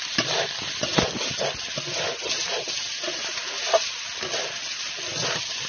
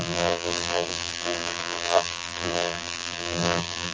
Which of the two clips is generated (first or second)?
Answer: second